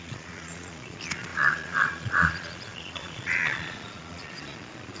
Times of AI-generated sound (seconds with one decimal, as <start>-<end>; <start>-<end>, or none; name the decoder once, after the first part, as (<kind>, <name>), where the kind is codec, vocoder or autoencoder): 0.0-5.0 (vocoder, Vocos)